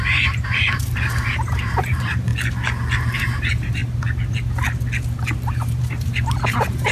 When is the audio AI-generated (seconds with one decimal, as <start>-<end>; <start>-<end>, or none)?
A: 0.0-2.3; 3.2-3.8; 5.3-6.9